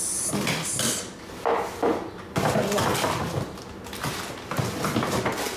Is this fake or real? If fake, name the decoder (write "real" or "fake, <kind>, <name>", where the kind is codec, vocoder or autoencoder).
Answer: real